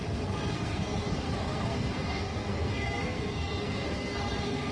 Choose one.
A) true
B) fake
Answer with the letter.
B